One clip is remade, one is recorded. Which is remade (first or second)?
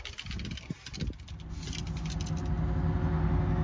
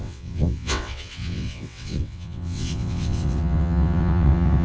second